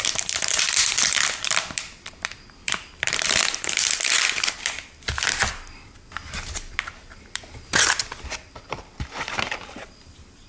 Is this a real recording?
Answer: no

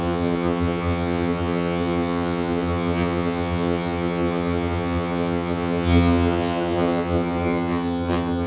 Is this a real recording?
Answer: no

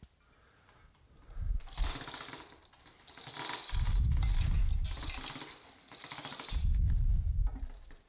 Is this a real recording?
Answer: yes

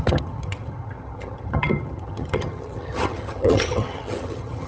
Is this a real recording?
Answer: no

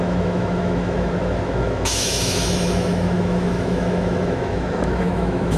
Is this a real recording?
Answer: no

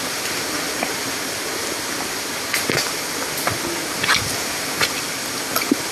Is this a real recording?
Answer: yes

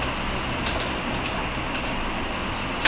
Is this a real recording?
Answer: yes